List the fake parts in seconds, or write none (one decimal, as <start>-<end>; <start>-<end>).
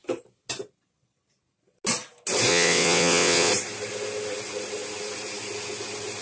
2.5-3.5